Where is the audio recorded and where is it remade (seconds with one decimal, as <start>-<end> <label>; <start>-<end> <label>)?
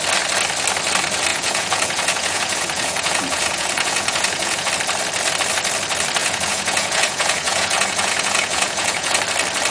0.0-1.3 recorded; 1.3-4.7 remade; 4.7-6.2 recorded; 6.2-9.2 remade; 9.2-9.7 recorded